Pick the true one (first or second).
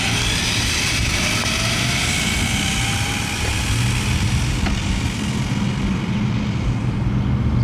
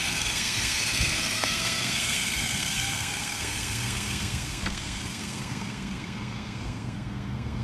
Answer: first